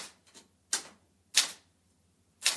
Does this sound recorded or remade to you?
recorded